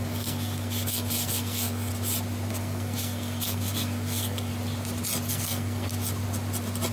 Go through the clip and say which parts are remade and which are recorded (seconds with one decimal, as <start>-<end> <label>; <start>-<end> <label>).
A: 0.0-1.9 remade; 1.9-2.5 recorded; 2.5-4.5 remade; 4.5-5.3 recorded; 5.3-5.9 remade; 5.9-6.9 recorded